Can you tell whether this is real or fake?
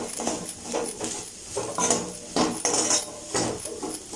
real